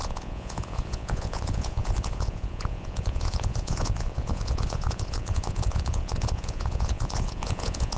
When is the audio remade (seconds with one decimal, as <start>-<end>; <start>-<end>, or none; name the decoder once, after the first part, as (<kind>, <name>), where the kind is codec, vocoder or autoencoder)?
0.0-8.0 (vocoder, Vocos)